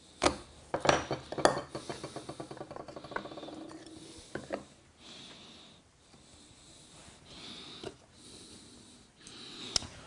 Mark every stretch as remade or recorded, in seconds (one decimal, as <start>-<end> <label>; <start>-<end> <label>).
0.0-10.1 recorded